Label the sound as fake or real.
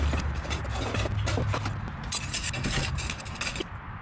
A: real